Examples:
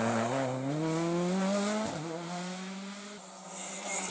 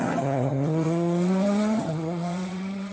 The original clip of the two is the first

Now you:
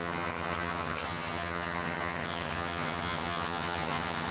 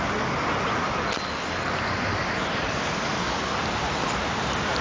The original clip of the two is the second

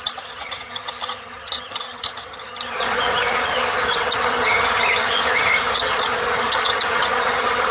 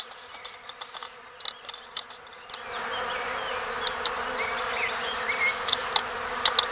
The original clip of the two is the second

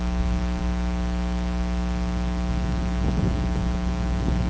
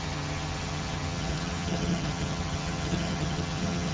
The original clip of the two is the first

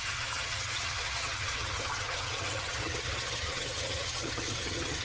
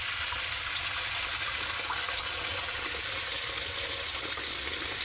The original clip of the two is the second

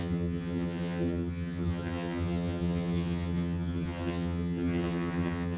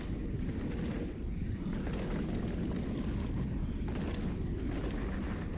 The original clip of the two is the second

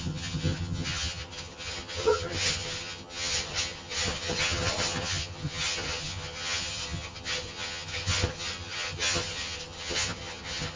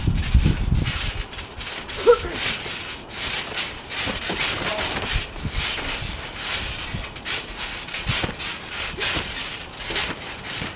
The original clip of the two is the second